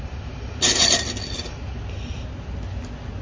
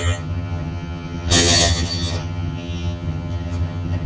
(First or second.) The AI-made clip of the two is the second